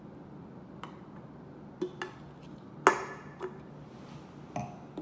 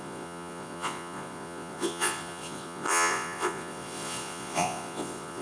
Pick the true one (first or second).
first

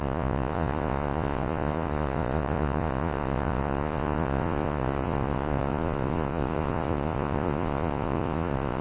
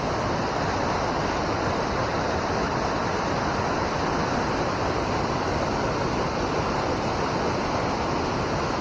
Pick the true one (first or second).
second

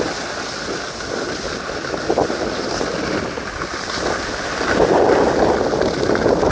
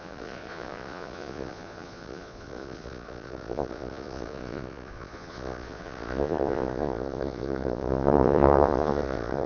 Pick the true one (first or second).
first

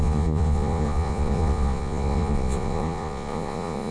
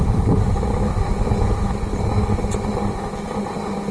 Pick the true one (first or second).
second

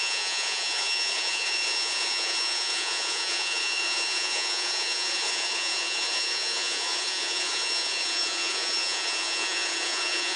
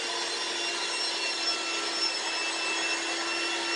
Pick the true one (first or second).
second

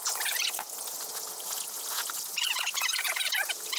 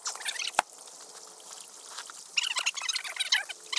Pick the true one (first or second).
second